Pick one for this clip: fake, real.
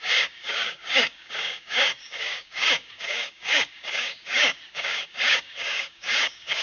fake